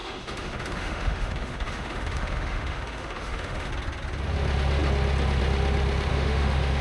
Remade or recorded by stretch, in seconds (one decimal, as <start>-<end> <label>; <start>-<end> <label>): 0.0-3.7 remade; 3.7-6.1 recorded; 6.1-6.8 remade